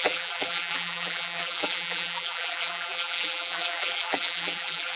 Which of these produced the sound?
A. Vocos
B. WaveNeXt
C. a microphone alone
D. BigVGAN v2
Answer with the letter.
D